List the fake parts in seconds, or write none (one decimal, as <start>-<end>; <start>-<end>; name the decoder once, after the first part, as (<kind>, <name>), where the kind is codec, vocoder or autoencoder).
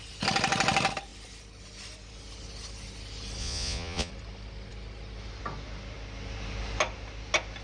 3.4-4.1 (vocoder, Vocos)